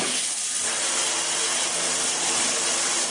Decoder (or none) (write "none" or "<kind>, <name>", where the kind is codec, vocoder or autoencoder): none